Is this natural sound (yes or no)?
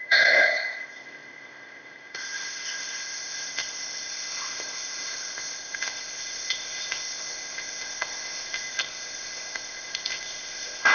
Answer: no